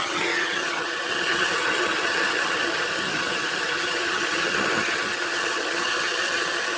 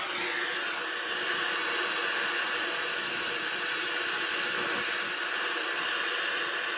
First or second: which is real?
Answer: second